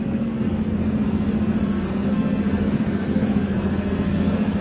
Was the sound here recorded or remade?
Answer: remade